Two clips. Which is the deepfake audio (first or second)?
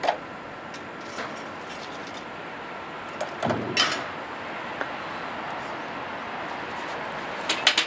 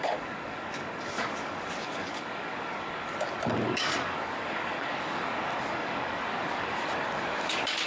second